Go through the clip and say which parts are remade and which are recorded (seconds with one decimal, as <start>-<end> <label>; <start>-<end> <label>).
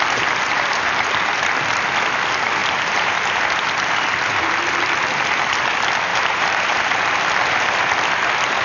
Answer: 0.0-2.6 recorded; 2.6-3.4 remade; 3.4-6.1 recorded; 6.1-6.8 remade; 6.8-8.6 recorded